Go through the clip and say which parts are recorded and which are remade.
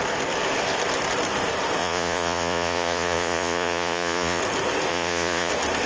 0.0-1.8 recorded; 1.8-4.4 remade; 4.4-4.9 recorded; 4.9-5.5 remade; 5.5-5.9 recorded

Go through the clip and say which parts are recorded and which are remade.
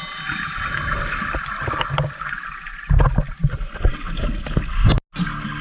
0.0-5.6 recorded